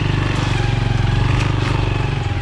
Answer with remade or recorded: recorded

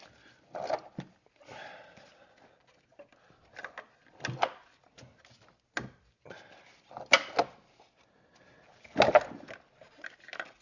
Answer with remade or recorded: recorded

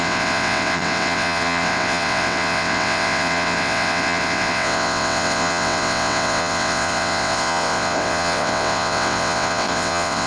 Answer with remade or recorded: remade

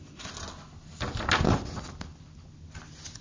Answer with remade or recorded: recorded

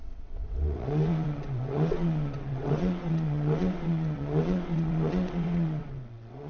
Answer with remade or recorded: remade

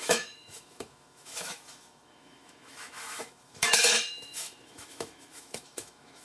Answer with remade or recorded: remade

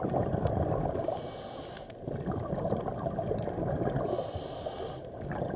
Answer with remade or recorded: recorded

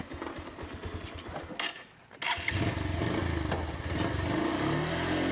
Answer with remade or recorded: recorded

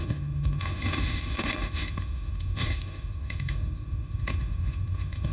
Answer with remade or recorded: remade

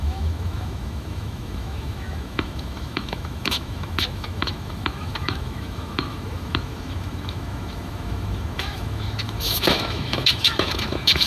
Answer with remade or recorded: remade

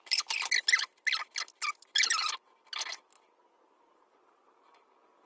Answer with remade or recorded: recorded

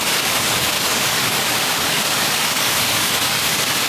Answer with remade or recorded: remade